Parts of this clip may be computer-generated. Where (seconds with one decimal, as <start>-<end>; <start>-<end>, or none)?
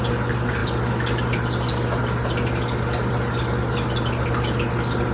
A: none